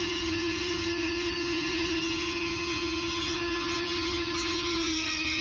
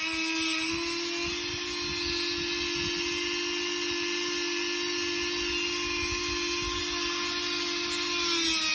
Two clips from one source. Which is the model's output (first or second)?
first